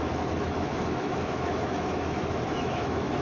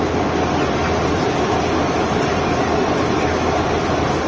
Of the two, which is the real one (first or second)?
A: second